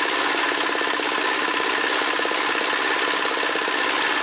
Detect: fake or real real